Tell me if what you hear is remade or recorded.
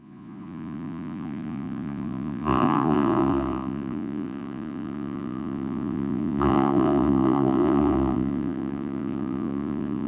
remade